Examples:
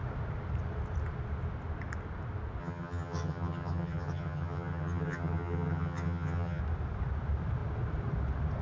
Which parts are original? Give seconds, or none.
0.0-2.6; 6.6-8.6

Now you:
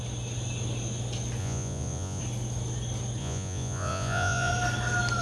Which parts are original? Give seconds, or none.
0.0-1.4; 2.2-3.2; 4.5-5.2